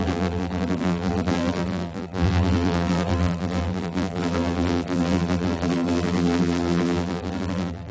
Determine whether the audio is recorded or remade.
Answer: remade